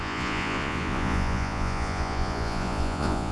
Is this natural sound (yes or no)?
no